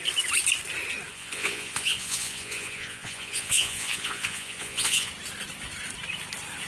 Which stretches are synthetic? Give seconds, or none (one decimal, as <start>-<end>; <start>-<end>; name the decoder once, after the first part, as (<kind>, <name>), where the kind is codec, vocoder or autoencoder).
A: 1.1-5.1 (vocoder, Vocos)

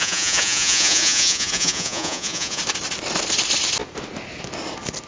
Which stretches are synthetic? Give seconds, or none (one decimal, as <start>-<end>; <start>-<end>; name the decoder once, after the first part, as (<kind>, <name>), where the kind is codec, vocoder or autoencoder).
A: 0.0-2.6 (vocoder, Vocos)

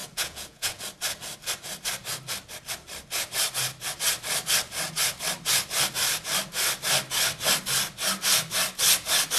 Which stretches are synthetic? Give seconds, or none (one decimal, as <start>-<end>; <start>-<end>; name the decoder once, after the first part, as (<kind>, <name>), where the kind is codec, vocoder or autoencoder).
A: 0.0-0.8 (vocoder, Vocos)